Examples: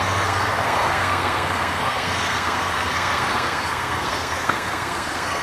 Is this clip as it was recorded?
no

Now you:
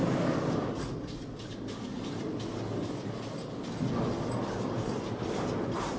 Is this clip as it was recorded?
yes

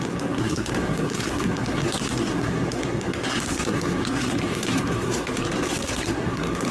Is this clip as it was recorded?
no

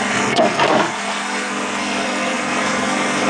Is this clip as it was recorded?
no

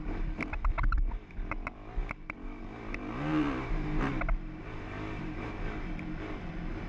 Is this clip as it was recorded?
yes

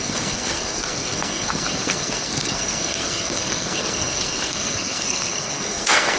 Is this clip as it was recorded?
no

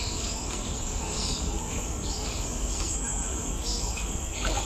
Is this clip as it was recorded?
no